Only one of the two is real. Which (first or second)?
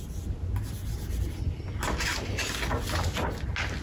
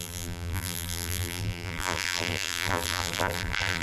first